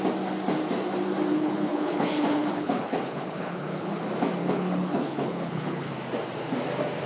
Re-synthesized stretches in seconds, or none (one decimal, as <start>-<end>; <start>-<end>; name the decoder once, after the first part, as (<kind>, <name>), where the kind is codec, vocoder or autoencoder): 1.3-4.0 (codec, HILCodec); 4.4-5.9